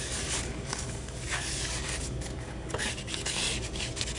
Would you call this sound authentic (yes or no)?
no